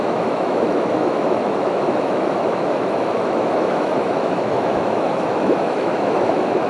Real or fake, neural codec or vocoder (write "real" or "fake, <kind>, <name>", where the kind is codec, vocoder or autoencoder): fake, autoencoder, DAC-VAE